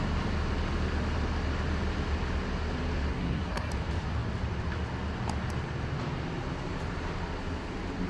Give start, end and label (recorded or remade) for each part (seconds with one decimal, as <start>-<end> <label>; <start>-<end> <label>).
0.0-3.1 recorded; 3.1-3.7 remade; 3.7-8.1 recorded